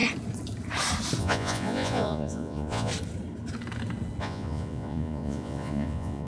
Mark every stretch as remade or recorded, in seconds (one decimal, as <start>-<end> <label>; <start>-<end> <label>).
0.0-1.2 recorded; 1.2-2.9 remade; 2.9-4.2 recorded; 4.2-6.3 remade